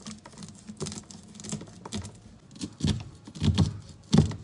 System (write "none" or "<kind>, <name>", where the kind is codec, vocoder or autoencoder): none